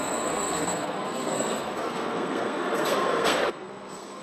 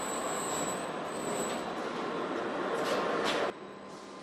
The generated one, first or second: first